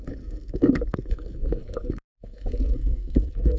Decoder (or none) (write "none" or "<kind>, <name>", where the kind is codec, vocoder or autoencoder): codec, SNAC